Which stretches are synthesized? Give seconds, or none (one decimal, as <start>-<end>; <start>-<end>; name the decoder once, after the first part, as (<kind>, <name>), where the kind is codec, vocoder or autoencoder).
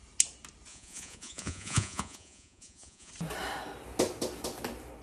0.7-3.1 (vocoder, Vocos)